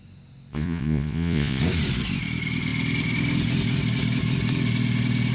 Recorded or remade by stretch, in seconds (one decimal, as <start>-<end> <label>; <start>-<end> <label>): 0.0-0.5 recorded; 0.5-1.6 remade; 1.6-5.3 recorded